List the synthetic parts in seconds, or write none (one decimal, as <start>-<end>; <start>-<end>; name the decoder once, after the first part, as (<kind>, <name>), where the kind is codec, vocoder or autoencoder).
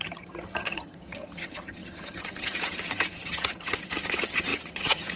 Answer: 0.0-5.2 (vocoder, HiFi-GAN)